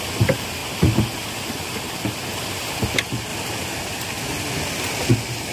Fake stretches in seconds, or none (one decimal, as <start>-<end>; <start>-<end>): none